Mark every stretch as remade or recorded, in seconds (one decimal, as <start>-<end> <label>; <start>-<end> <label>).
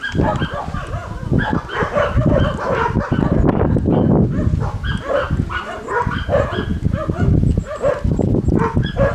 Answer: 0.0-9.1 recorded